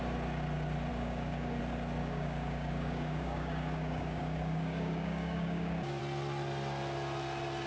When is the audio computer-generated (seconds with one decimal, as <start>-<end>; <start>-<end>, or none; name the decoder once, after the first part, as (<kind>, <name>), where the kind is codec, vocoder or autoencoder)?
0.9-1.6 (codec, DAC); 2.0-6.0